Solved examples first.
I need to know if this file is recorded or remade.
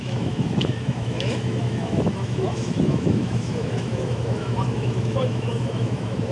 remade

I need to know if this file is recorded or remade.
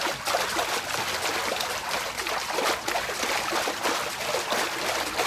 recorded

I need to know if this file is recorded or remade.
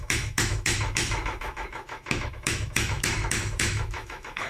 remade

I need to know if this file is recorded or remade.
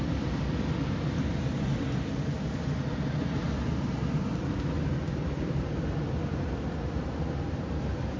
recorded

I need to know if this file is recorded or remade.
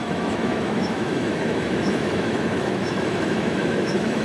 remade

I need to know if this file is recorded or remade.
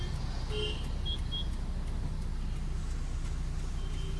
recorded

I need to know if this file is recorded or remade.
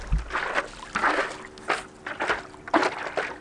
recorded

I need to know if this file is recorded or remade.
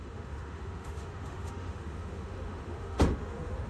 remade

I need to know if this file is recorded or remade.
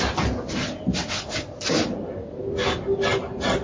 recorded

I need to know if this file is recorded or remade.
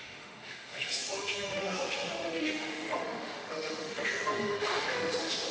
remade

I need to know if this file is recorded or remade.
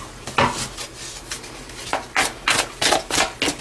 recorded